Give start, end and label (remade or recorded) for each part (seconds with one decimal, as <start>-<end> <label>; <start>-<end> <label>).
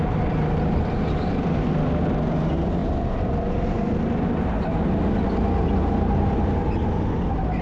0.0-7.6 recorded